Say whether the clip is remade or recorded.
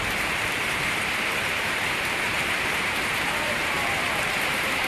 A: remade